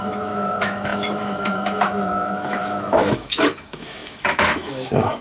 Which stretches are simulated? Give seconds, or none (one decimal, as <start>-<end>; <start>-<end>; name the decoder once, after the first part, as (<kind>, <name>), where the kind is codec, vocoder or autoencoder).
0.0-5.2 (autoencoder, DAC-VAE)